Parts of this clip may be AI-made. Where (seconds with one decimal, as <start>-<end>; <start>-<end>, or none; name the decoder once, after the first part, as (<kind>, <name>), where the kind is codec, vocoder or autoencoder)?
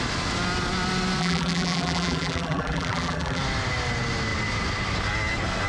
1.2-3.4 (vocoder, BigVGAN v2)